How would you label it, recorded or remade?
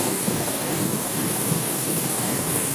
remade